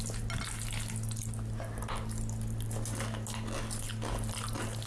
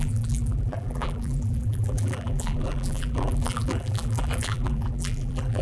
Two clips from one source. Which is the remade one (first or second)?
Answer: second